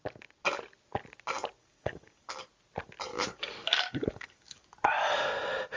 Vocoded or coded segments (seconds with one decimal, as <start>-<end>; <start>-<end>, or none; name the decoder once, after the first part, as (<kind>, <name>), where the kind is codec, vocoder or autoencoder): 1.6-2.4 (codec, DAC); 3.1-4.7